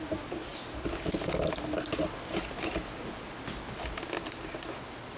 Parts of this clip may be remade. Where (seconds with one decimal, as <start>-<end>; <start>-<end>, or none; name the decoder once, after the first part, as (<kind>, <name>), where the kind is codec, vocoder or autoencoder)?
none